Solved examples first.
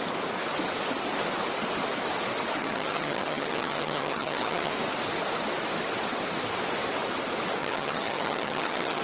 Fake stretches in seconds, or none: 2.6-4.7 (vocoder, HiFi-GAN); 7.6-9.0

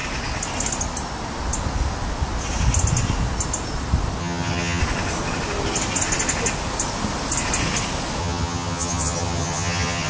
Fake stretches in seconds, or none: 4.2-4.8 (vocoder, HiFi-GAN); 8.2-10.1

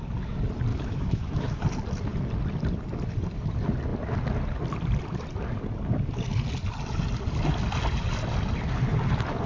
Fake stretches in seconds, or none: 0.7-1.6 (autoencoder, DAC-VAE)

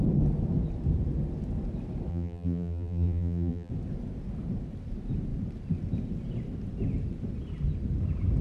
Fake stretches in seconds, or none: 2.1-3.7 (vocoder, BigVGAN v2)

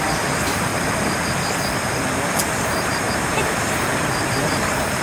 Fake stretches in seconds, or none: 0.0-0.7 (vocoder, BigVGAN v2); 2.5-5.0

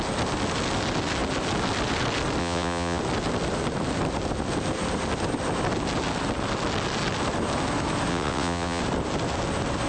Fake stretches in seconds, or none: 2.4-3.0 (vocoder, WaveNeXt); 8.1-8.8

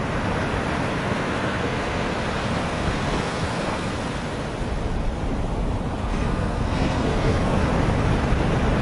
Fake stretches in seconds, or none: 1.0-2.1 (codec, SNAC); 2.6-3.9; 6.0-7.6

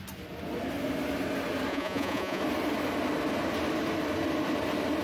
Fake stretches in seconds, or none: 1.7-2.4 (vocoder, Vocos)